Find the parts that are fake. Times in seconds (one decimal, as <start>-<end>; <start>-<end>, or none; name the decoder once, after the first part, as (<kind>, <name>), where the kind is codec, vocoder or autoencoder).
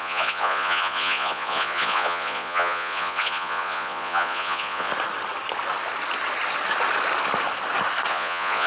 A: 0.0-4.9 (vocoder, Vocos); 8.1-8.7